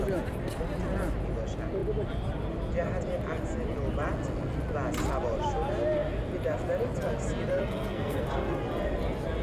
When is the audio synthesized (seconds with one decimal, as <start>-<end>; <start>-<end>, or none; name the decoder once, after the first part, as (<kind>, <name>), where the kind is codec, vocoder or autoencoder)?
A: 7.5-8.6 (codec, SNAC)